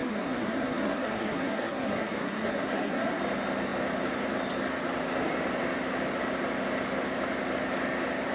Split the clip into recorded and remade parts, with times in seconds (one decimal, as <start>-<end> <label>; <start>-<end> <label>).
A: 0.0-3.2 remade; 3.2-8.3 recorded